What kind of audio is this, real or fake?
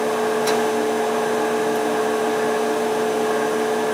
real